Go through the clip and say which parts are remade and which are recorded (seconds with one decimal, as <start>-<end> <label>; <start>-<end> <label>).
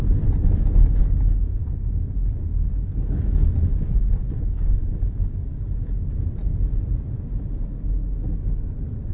0.0-9.1 recorded